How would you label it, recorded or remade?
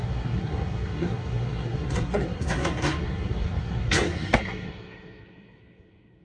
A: remade